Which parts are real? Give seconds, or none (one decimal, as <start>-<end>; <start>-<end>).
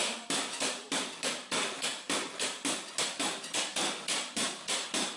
1.3-5.2